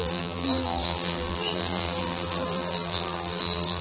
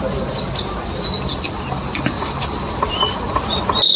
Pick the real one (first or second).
second